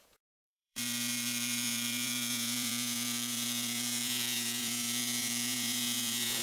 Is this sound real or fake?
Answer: fake